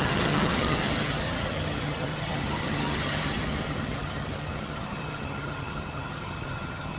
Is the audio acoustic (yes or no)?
no